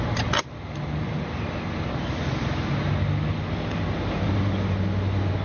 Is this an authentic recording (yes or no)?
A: yes